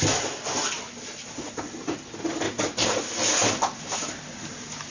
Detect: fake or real real